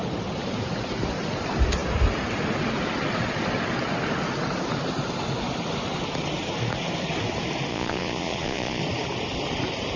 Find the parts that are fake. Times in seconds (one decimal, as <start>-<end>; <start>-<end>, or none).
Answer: 7.7-8.8